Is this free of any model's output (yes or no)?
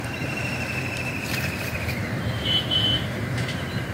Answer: no